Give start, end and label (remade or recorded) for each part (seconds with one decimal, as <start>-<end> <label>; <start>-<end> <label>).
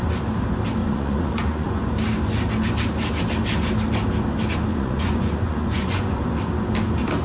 0.0-0.8 recorded; 0.8-1.8 remade; 1.8-4.7 recorded; 4.7-6.2 remade; 6.2-7.2 recorded